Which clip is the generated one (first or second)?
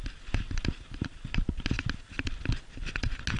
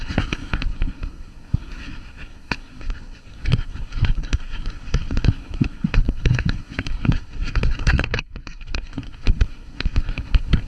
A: second